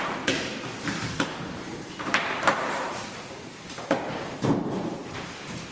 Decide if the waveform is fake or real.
fake